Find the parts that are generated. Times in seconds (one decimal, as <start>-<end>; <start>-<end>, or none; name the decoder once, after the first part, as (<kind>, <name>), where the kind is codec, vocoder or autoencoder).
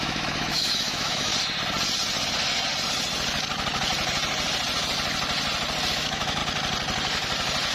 0.0-1.3 (autoencoder, DAC-VAE); 5.9-6.4